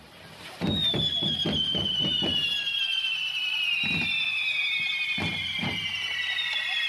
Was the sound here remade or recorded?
recorded